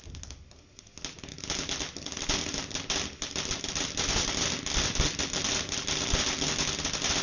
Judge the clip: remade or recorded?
recorded